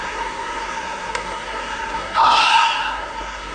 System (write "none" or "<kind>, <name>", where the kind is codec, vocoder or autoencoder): codec, SNAC